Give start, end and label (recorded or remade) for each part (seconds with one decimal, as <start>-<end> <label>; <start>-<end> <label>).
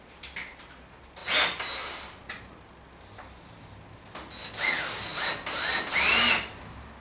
0.0-7.0 recorded